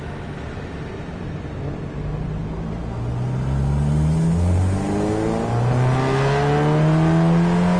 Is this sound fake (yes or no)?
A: no